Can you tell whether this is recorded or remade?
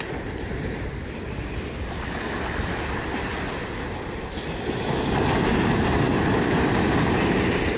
recorded